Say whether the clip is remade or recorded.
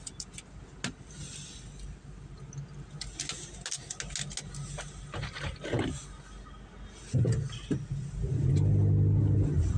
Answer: recorded